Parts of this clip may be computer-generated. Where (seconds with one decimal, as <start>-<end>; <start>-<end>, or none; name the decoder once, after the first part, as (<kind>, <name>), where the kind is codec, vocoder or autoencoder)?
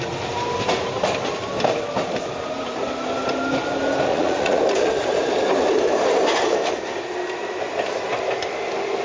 4.1-4.6 (vocoder, Vocos)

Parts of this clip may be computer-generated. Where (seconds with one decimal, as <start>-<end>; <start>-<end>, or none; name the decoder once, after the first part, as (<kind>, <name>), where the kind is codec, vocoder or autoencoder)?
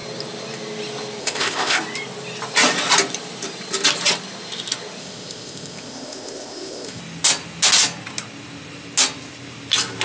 1.2-1.8 (codec, ZipCodec); 5.0-7.0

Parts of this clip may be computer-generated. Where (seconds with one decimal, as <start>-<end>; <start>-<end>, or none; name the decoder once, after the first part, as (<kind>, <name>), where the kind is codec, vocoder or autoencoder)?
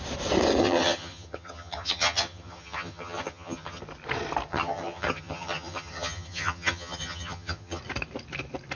0.6-3.8 (vocoder, HiFi-GAN); 4.5-7.8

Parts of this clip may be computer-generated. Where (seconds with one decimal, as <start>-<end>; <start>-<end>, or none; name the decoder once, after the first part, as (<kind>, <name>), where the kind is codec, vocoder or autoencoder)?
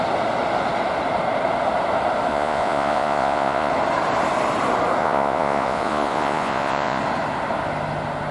2.3-3.7 (vocoder, Vocos); 5.0-7.0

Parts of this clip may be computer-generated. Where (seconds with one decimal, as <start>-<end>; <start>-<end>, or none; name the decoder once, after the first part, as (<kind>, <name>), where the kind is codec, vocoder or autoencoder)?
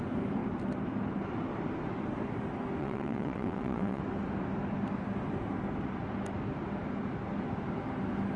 2.8-4.0 (vocoder, WaveNeXt)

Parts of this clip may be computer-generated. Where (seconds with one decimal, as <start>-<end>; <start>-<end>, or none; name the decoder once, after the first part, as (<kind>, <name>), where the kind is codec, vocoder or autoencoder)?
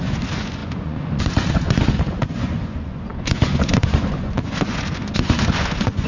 0.0-6.1 (vocoder, Vocos)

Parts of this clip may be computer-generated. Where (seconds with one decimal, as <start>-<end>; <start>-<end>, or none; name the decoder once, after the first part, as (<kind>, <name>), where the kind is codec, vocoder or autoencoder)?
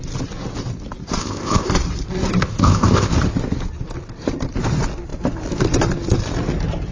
1.2-1.7 (codec, ZipCodec); 2.4-3.1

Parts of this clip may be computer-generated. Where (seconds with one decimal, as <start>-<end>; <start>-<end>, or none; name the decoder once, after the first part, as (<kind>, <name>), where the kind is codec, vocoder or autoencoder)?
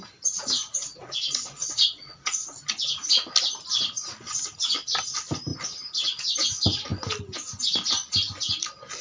0.8-2.6 (vocoder, Vocos)